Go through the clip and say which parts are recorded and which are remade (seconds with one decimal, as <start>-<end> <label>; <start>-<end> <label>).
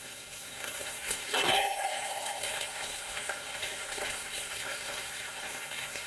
0.0-6.1 remade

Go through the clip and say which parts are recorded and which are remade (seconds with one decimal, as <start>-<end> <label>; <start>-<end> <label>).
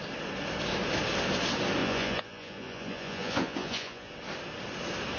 0.0-1.8 recorded; 1.8-4.1 remade; 4.1-5.2 recorded